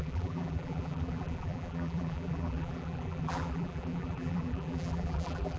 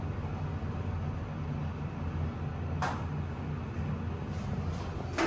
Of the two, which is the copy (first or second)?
first